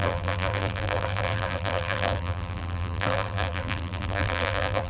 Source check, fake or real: fake